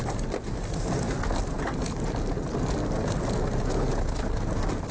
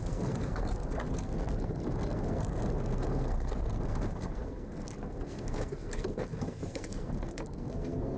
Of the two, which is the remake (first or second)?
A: second